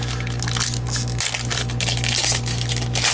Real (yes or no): yes